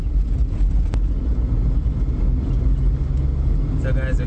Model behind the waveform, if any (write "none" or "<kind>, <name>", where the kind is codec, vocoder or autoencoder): none